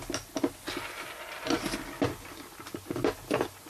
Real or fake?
real